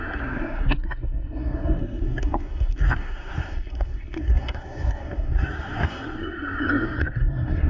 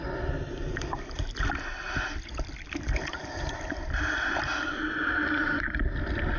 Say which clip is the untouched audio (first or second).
second